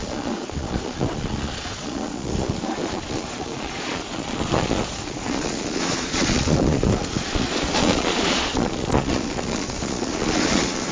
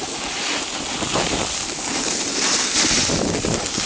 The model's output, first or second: first